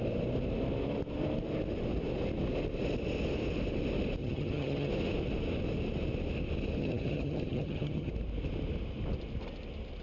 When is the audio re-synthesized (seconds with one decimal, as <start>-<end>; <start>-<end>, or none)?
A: 4.2-4.9; 6.8-8.1